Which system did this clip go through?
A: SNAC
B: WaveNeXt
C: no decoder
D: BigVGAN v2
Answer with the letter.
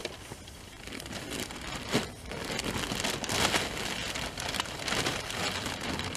C